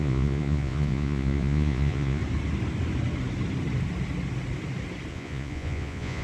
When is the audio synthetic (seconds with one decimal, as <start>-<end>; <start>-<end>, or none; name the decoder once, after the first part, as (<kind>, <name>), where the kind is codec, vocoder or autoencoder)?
0.0-2.2 (vocoder, Vocos); 5.1-6.2